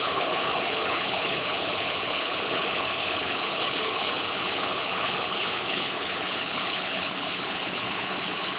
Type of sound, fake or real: fake